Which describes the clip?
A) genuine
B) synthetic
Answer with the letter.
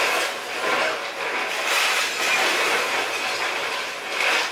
A